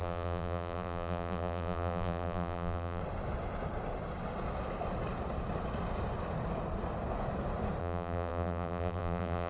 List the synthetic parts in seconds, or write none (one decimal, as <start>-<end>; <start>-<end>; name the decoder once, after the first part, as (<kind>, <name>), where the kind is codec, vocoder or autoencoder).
0.0-3.0 (vocoder, BigVGAN v2); 7.8-9.5